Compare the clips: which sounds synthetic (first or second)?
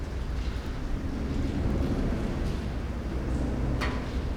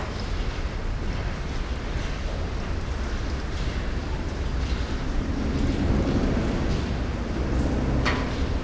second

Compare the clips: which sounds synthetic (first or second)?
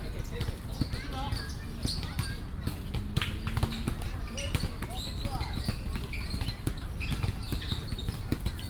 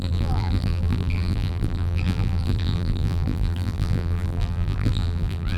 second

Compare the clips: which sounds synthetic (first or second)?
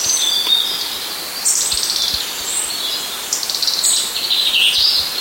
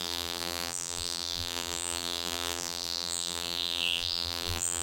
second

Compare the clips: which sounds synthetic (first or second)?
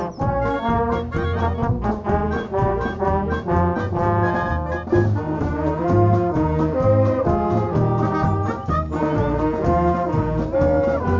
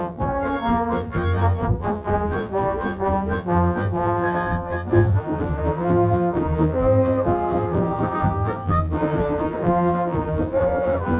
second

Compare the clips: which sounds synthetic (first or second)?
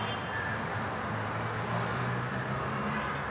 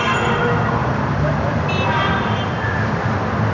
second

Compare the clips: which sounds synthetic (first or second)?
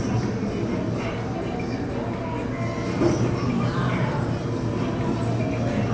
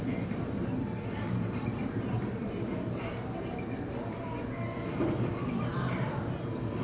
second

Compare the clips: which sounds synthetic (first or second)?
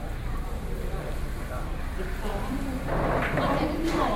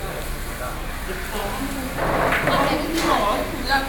first